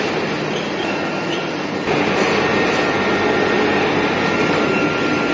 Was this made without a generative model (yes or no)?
yes